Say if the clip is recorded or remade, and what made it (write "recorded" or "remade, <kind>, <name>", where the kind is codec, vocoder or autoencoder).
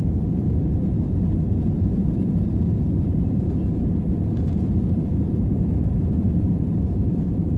remade, vocoder, BigVGAN v2